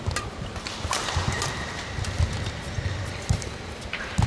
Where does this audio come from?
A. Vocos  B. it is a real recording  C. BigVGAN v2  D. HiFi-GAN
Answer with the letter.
B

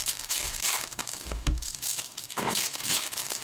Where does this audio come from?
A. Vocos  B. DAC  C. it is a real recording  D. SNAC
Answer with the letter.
B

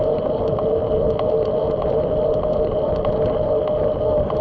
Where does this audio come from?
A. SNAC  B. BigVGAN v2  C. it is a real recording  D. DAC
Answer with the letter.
C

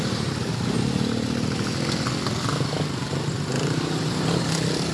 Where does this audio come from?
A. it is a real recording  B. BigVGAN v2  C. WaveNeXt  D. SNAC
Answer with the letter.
A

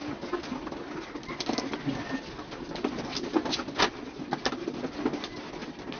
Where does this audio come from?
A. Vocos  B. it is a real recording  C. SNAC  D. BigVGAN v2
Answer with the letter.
B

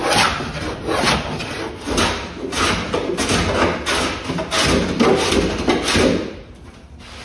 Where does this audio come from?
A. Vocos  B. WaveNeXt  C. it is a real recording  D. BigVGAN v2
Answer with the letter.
C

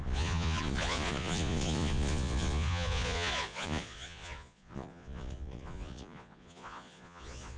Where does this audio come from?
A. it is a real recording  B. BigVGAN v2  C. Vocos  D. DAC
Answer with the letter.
C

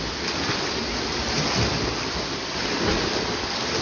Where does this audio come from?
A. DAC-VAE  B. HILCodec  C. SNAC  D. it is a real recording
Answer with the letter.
D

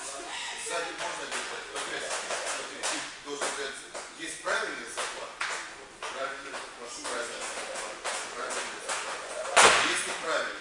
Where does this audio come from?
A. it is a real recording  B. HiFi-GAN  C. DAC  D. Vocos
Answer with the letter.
D